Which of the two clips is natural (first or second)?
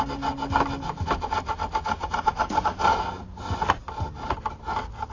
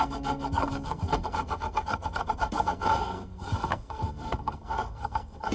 first